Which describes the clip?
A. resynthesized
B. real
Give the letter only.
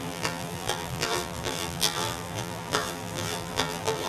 A